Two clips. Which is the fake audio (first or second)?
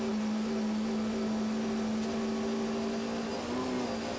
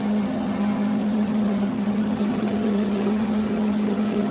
second